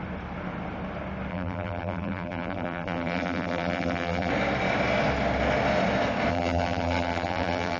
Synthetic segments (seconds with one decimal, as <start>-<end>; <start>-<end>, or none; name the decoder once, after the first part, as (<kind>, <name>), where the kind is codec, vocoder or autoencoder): 1.3-4.3 (vocoder, BigVGAN v2); 6.3-7.8